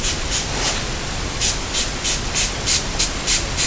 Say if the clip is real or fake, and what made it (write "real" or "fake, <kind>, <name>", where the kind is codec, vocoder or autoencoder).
real